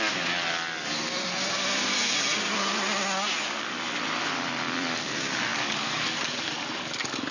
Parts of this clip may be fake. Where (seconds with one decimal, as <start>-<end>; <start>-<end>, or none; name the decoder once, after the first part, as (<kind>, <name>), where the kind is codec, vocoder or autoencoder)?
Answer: 5.5-7.3 (codec, DAC)